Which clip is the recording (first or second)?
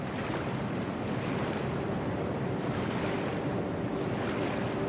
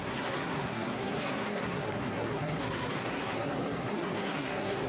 first